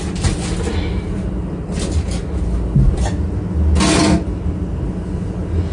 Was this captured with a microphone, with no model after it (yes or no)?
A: yes